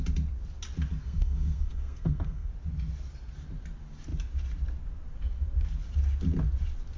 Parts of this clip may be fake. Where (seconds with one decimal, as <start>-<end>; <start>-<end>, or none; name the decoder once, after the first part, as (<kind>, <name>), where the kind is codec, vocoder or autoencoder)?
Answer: 1.0-2.5 (codec, SNAC)